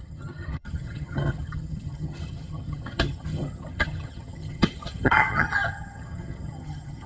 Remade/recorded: remade